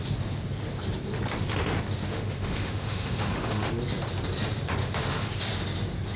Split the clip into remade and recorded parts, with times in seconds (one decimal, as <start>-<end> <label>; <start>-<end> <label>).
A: 0.0-2.1 recorded; 2.1-3.7 remade; 3.7-4.8 recorded; 4.8-5.3 remade; 5.3-6.2 recorded